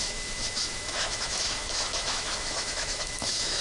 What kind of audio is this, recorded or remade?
remade